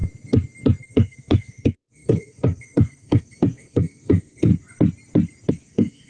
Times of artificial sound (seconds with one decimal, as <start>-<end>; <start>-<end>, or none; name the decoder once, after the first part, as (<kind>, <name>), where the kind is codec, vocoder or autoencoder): 0.8-4.5 (codec, SNAC); 5.5-6.1